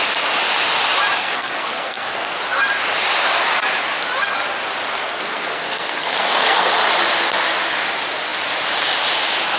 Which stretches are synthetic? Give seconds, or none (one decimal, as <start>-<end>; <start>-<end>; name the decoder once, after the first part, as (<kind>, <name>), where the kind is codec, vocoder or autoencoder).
1.2-2.4 (codec, SNAC); 5.0-6.7